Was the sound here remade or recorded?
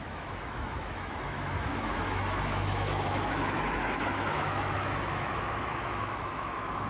remade